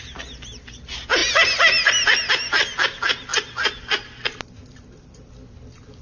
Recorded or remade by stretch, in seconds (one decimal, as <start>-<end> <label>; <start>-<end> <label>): 0.0-6.0 recorded